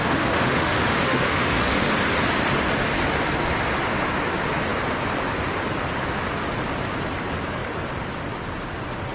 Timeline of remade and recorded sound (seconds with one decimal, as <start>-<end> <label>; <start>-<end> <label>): 0.0-1.9 remade; 1.9-9.1 recorded